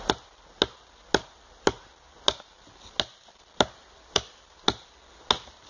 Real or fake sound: real